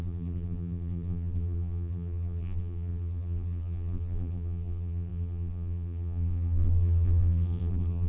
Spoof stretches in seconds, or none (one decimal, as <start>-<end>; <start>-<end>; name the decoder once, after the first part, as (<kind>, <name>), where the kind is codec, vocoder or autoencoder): 0.0-8.1 (vocoder, BigVGAN v2)